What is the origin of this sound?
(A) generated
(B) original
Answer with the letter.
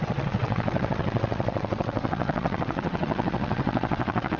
A